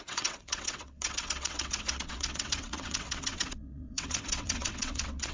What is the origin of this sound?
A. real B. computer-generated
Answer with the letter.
B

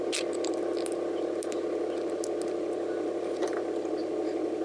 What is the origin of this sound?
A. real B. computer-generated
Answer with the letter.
A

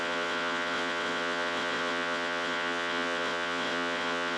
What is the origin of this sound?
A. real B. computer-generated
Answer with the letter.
B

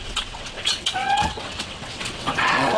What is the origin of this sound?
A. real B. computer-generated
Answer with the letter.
B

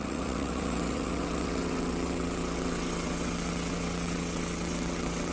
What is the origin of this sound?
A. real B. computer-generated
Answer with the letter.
B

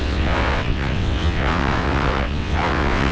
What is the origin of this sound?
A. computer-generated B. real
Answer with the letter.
A